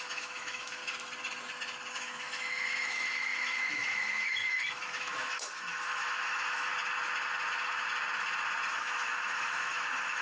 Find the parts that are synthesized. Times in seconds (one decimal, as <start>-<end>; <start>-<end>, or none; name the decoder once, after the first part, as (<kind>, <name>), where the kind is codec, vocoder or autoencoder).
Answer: 0.0-0.8 (autoencoder, DAC-VAE); 1.9-6.7; 8.7-10.2